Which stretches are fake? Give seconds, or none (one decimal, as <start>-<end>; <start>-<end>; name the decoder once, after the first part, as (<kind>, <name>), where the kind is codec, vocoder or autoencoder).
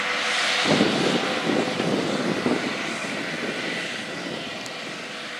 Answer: none